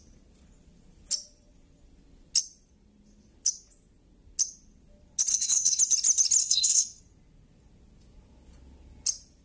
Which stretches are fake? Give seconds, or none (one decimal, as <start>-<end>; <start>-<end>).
5.3-5.8; 6.4-7.0